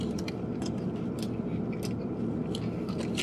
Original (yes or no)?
yes